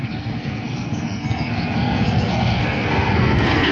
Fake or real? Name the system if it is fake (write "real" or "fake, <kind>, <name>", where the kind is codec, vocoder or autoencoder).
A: fake, codec, SNAC